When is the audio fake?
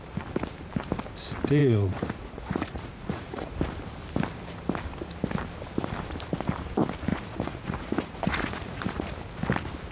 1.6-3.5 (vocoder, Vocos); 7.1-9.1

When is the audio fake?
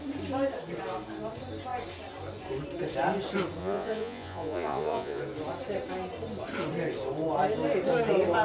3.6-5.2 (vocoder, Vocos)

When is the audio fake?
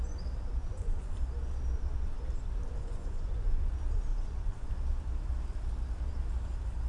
0.6-1.1 (vocoder, Vocos); 2.8-3.6; 4.1-4.7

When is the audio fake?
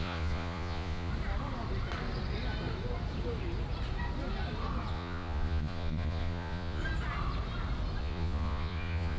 0.0-1.1 (vocoder, Vocos); 4.9-6.8; 8.0-9.2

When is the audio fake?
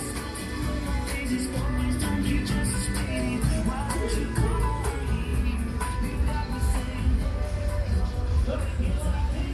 none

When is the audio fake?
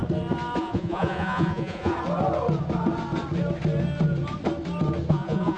0.6-1.9 (vocoder, Vocos); 5.1-5.6